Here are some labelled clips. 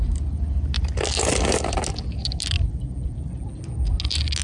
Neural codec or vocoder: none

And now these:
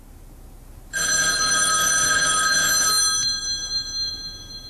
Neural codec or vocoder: none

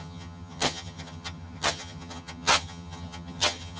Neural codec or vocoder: vocoder, HiFi-GAN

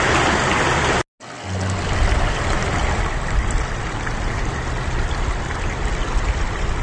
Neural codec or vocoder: none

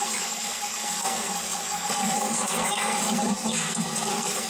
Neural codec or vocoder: codec, SNAC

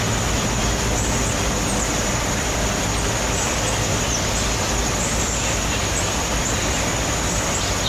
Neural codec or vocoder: none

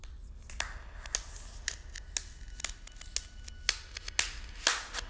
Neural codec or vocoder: none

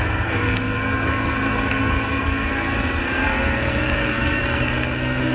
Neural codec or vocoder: codec, SNAC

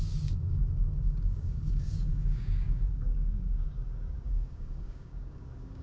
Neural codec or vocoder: codec, DAC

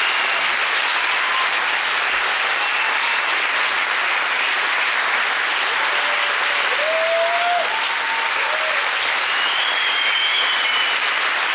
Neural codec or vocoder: none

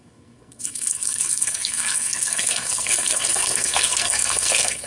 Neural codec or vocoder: codec, SNAC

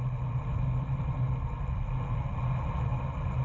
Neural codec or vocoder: none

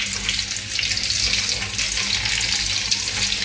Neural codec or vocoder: none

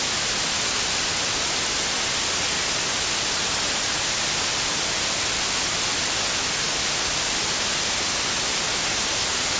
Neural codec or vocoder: none